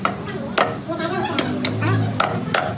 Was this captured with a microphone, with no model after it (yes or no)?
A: yes